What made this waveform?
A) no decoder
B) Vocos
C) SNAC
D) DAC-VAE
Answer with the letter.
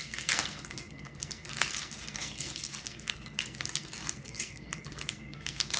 C